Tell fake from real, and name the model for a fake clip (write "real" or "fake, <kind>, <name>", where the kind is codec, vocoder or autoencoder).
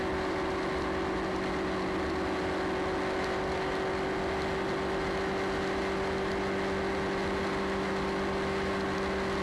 real